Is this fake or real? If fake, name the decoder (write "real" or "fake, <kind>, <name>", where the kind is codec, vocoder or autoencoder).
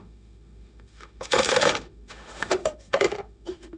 fake, autoencoder, DAC-VAE